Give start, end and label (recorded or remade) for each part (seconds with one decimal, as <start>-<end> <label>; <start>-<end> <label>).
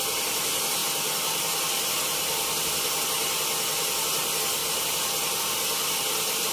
0.0-6.5 recorded